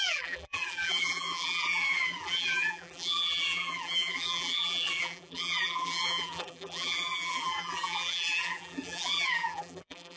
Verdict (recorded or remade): remade